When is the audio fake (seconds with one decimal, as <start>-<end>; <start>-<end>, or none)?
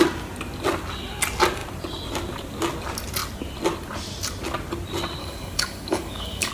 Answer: 5.2-6.5